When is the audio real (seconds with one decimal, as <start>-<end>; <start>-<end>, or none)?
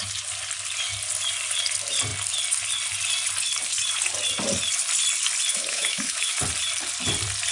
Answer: 0.0-5.5; 6.4-7.5